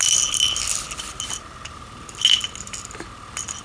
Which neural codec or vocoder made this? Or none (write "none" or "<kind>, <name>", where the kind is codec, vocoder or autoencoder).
none